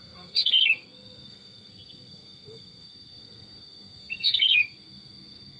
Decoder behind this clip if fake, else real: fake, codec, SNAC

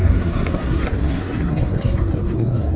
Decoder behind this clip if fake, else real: fake, codec, SNAC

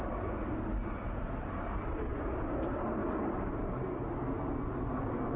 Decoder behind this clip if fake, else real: real